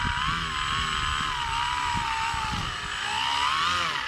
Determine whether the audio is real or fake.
real